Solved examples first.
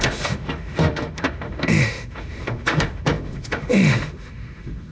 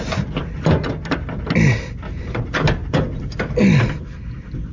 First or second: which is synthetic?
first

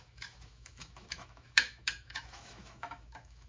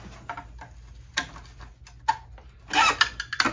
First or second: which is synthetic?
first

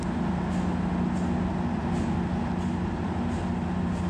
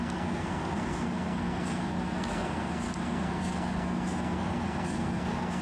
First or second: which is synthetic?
second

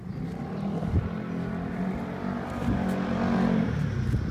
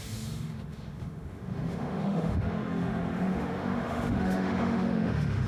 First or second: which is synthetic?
second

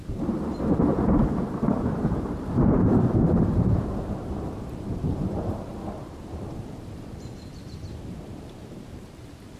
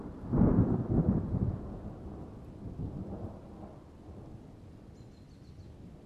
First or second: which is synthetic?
first